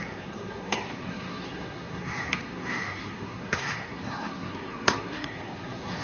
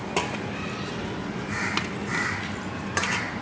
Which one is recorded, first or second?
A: second